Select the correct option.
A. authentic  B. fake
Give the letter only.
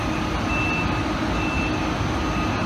A